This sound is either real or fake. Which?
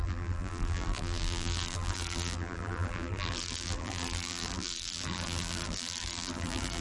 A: fake